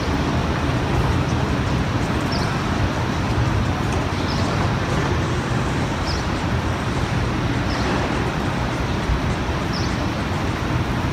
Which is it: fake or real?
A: fake